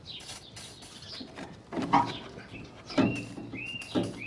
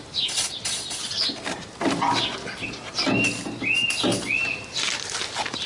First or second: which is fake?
first